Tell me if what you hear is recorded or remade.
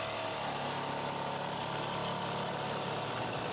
recorded